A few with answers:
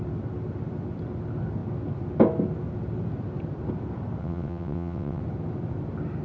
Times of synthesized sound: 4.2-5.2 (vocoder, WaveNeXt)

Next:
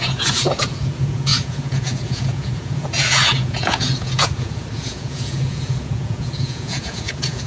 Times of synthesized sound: 0.0-7.5 (vocoder, Vocos)

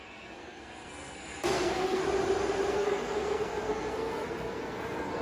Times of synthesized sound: 0.0-2.0 (codec, SNAC); 2.7-5.2

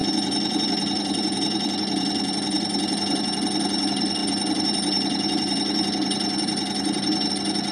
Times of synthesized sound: 0.0-3.2 (vocoder, BigVGAN v2); 4.2-7.3

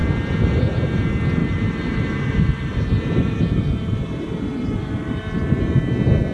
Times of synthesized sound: 1.4-5.2 (vocoder, BigVGAN v2)

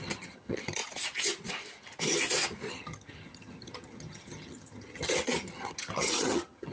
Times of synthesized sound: 0.0-0.8 (vocoder, HiFi-GAN); 2.7-6.7